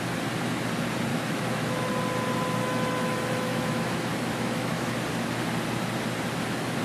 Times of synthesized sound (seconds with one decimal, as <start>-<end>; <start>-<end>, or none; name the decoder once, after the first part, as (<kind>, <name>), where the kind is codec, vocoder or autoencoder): 1.1-1.9 (autoencoder, DAC-VAE); 2.6-4.9

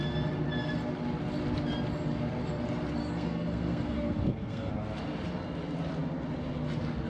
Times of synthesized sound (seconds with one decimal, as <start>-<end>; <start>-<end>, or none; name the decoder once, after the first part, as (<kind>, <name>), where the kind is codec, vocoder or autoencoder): 3.0-4.7 (codec, SNAC)

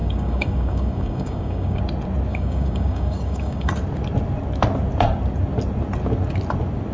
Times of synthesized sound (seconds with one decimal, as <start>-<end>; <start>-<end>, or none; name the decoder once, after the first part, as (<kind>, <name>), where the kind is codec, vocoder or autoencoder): 0.0-1.8 (codec, DAC); 2.3-3.7

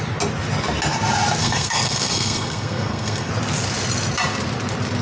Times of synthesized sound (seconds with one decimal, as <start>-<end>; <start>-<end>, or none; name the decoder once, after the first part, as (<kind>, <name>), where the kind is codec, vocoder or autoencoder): 1.4-3.3 (codec, SNAC)

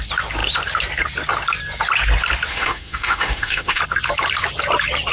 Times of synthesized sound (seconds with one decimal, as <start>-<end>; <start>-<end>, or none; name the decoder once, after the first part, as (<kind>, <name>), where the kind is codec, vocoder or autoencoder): 2.5-3.8 (autoencoder, DAC-VAE)